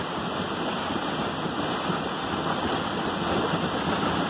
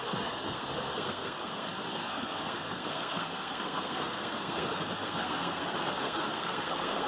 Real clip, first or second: first